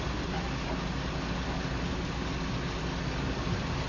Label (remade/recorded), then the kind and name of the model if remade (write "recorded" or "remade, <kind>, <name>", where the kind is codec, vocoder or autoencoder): recorded